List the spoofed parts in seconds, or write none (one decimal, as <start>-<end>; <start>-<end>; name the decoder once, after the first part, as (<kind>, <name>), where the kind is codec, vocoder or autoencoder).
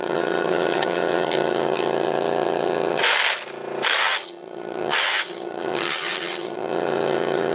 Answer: 0.0-3.0 (vocoder, HiFi-GAN); 4.0-7.5